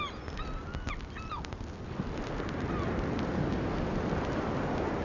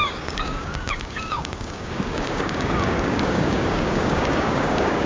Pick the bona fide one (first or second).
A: first